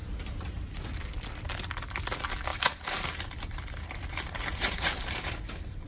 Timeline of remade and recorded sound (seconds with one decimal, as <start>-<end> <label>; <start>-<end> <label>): 0.0-2.5 recorded; 2.5-5.9 remade